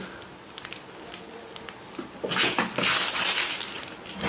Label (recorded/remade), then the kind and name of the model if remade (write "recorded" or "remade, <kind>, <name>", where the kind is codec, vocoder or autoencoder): recorded